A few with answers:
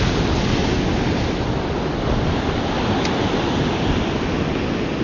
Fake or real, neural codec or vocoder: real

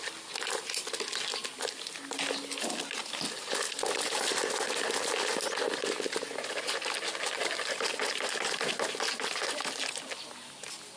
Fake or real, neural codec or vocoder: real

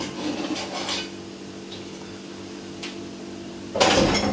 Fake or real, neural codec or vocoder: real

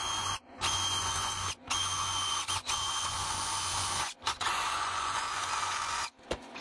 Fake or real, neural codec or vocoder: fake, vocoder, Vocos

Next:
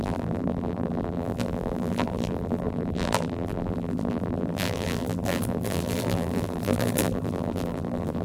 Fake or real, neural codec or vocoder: fake, vocoder, BigVGAN v2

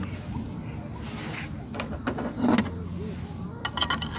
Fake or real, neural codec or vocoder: real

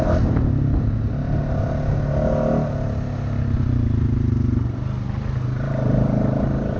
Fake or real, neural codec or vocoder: real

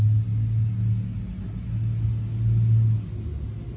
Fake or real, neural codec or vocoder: real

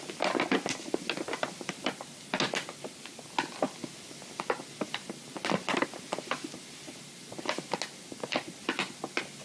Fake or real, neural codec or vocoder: real